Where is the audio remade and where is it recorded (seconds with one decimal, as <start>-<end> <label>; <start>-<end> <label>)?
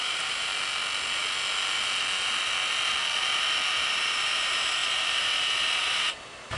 0.0-0.5 remade; 0.5-3.9 recorded; 3.9-6.6 remade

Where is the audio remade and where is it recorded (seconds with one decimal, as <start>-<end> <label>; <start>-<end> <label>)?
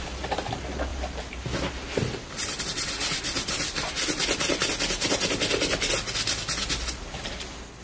0.0-7.8 recorded